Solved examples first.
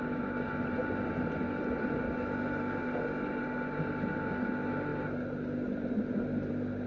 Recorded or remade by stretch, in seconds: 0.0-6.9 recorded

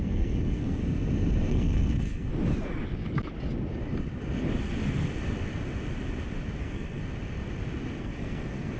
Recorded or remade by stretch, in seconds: 0.0-0.8 remade; 0.8-1.5 recorded; 1.5-2.3 remade; 2.3-6.6 recorded; 6.6-7.0 remade; 7.0-8.0 recorded; 8.0-8.8 remade